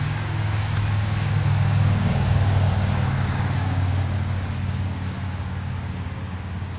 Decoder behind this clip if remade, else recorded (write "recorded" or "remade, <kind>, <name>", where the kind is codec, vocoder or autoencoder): remade, codec, DAC